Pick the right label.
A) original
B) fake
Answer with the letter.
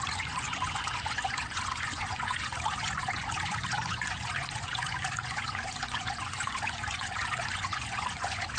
B